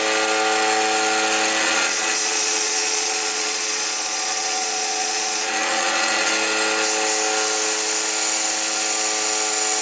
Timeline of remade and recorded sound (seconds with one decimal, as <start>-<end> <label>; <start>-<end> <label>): 0.0-1.6 recorded; 1.6-6.3 remade; 6.3-9.8 recorded